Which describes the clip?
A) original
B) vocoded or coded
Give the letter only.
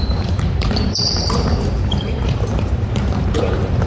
B